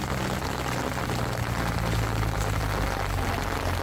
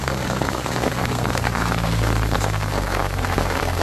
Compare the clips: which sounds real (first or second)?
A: first